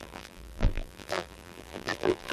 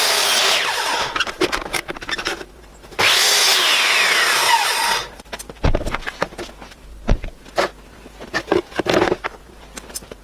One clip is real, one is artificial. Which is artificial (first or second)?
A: first